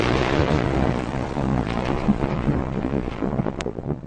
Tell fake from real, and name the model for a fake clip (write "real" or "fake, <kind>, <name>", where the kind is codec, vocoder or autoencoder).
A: fake, vocoder, Vocos